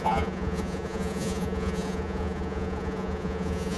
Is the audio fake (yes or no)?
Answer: yes